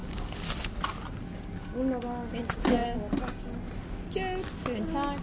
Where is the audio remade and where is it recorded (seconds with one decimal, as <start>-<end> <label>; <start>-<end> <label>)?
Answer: 0.0-0.8 remade; 0.8-5.2 recorded